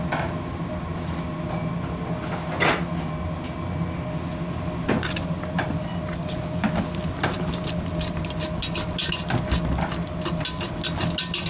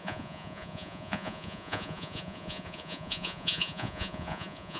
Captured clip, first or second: first